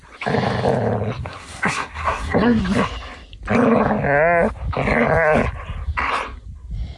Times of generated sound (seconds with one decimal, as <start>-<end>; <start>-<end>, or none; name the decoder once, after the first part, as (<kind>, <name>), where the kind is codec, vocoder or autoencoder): 1.2-2.6 (codec, SNAC)